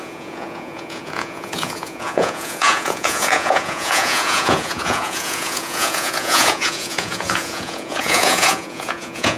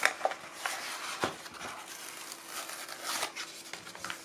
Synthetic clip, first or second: first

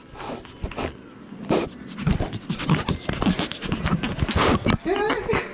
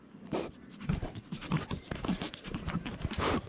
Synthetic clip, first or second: second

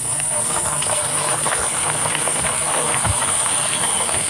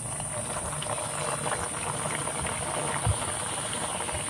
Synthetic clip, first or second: first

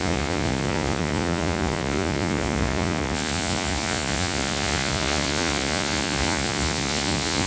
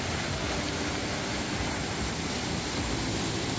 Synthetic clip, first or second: first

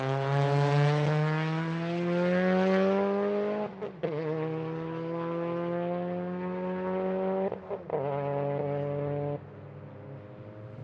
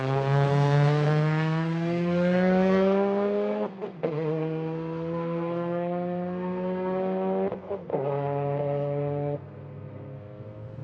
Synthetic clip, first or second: second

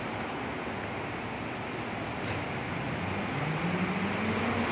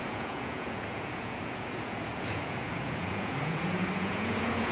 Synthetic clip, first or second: second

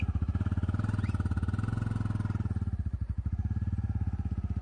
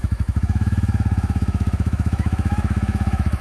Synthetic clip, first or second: second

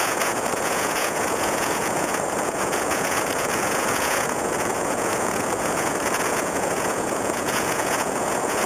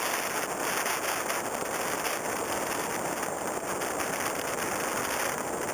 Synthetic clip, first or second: first